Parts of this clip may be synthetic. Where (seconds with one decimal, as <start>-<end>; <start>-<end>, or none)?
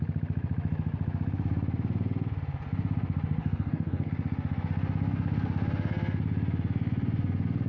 3.4-4.1